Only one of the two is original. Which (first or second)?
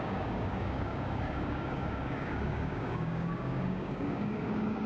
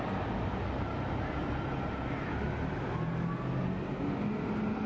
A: second